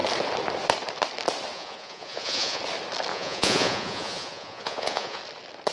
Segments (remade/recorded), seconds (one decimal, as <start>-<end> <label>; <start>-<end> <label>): 0.0-1.5 recorded; 1.5-2.6 remade; 2.6-3.1 recorded; 3.1-5.2 remade; 5.2-5.7 recorded